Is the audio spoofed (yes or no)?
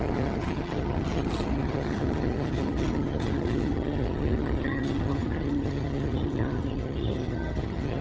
yes